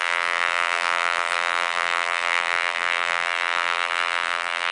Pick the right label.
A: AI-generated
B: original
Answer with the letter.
A